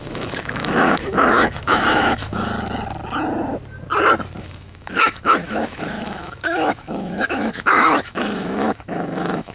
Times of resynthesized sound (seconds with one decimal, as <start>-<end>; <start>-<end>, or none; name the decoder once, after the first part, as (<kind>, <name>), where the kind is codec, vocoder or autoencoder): 0.0-2.5 (autoencoder, DAC-VAE); 4.4-9.5